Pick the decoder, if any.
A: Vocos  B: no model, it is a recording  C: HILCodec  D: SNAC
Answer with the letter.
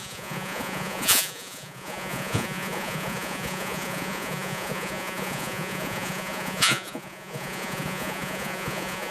A